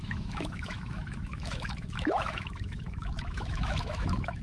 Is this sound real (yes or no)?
no